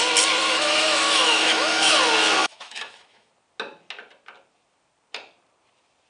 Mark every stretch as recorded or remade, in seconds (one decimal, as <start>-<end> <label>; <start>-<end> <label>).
0.0-0.4 recorded; 0.4-1.9 remade; 1.9-2.4 recorded; 2.4-3.3 remade; 3.3-6.1 recorded